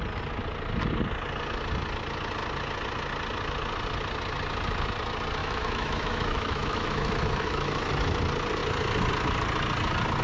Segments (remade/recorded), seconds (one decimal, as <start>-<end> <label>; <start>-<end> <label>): 0.0-5.4 recorded; 5.4-7.9 remade; 7.9-10.2 recorded